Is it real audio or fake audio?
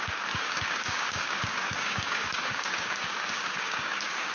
fake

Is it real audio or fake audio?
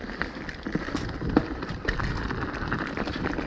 real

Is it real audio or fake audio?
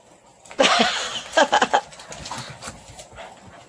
real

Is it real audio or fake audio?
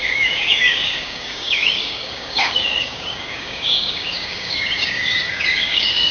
fake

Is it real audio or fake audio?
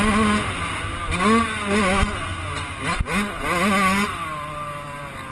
real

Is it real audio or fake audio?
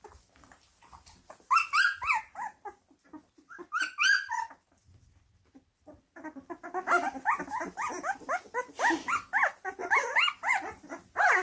real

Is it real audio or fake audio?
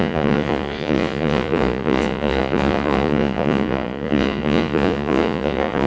fake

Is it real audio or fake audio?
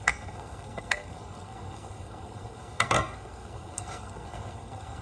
fake